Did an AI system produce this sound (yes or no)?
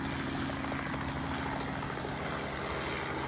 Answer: no